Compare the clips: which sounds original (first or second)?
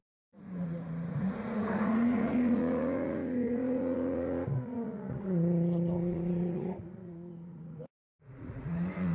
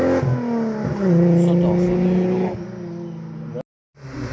second